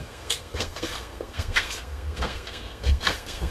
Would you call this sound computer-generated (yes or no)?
yes